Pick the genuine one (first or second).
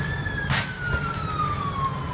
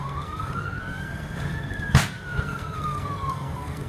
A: first